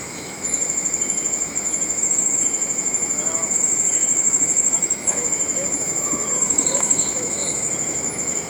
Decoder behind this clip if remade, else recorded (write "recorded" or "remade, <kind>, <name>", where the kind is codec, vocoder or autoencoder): remade, autoencoder, DAC-VAE